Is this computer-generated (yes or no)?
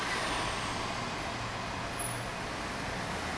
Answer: no